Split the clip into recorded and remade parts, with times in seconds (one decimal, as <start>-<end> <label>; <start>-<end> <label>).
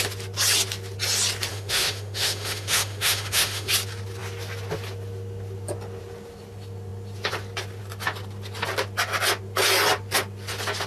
0.0-1.5 recorded; 1.5-3.7 remade; 3.7-10.9 recorded